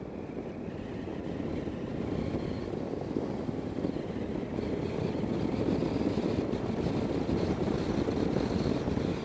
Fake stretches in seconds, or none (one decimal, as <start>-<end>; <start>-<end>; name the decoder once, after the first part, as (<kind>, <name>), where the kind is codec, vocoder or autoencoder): none